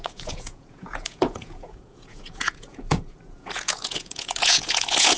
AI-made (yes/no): yes